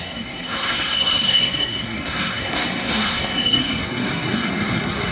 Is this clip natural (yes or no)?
no